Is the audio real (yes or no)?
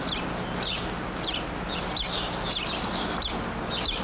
yes